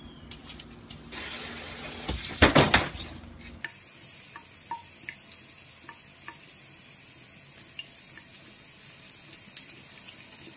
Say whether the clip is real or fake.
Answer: real